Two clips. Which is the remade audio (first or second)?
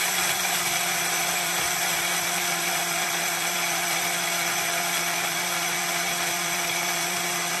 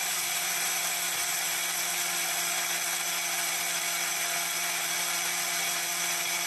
first